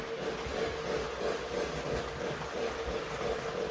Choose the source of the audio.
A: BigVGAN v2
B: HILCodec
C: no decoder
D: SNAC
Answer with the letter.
C